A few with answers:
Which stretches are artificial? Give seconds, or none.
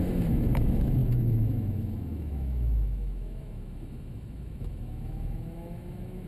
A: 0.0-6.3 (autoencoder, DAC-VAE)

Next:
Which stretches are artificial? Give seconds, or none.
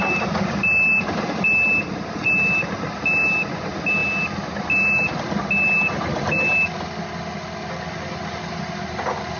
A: none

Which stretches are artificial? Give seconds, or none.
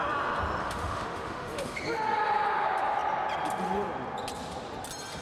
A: 0.6-1.8 (autoencoder, DAC-VAE)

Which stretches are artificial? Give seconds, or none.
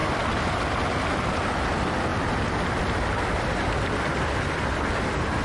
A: none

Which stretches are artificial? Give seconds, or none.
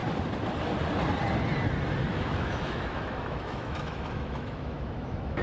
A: 2.1-5.4 (autoencoder, DAC-VAE)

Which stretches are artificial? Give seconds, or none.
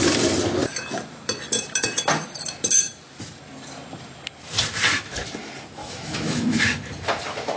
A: 5.8-6.6 (autoencoder, DAC-VAE)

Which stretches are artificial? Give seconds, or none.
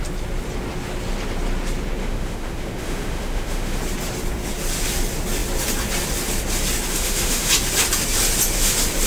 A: 2.0-3.8 (autoencoder, DAC-VAE); 6.9-7.5